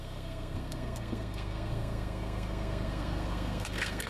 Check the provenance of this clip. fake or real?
fake